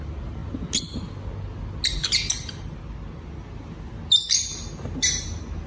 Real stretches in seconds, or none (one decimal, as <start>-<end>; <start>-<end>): 0.0-5.7